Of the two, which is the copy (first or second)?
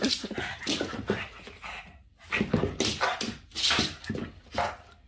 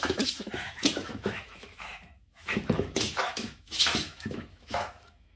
second